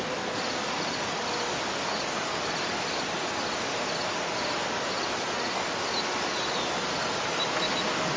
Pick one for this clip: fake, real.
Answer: real